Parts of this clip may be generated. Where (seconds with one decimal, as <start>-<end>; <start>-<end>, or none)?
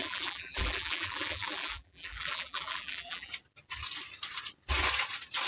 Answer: 0.0-3.3